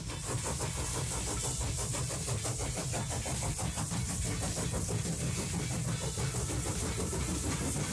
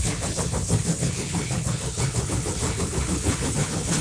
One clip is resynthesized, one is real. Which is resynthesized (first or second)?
second